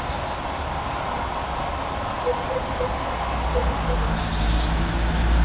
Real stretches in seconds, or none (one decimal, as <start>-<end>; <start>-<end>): 0.0-5.4